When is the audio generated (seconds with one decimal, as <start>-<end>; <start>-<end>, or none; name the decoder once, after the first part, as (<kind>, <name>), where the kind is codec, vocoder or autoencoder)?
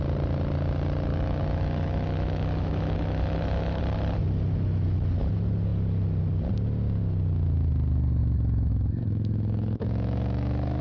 1.1-3.8 (autoencoder, DAC-VAE); 8.2-10.8